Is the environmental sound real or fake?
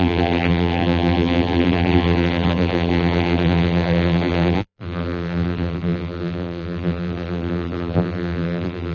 fake